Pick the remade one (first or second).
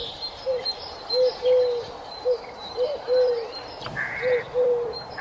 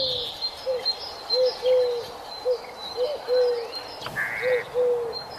first